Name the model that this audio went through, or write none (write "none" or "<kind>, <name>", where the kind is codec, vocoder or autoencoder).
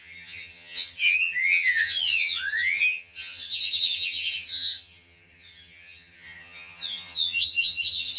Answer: vocoder, HiFi-GAN